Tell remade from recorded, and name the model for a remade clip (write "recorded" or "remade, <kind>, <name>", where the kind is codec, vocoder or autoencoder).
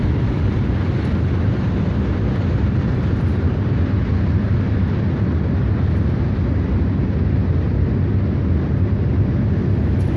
recorded